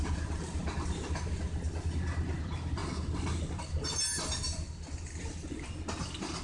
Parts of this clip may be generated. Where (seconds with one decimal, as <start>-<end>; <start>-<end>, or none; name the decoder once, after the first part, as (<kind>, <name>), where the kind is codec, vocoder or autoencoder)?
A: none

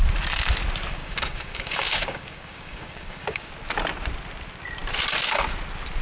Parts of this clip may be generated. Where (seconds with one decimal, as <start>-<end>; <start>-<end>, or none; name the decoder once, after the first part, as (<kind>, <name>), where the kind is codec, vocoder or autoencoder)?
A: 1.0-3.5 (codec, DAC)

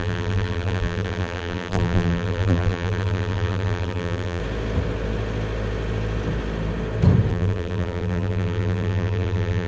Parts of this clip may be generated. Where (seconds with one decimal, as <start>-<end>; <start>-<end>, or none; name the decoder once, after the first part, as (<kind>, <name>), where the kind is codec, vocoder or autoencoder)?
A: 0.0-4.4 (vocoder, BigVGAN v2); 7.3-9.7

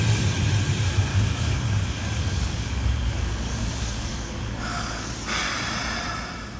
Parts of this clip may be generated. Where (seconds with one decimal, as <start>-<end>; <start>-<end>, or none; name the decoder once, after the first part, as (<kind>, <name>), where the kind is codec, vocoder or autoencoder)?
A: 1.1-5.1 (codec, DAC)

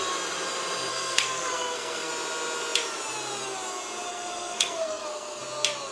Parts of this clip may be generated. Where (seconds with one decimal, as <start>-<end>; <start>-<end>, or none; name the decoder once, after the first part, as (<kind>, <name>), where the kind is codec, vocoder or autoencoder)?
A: 0.9-2.1 (codec, SNAC); 4.1-5.4